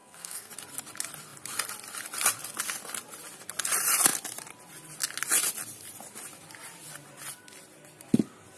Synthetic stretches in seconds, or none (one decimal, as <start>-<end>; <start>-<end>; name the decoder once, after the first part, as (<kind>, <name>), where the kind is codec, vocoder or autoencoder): 0.0-0.5 (codec, SNAC)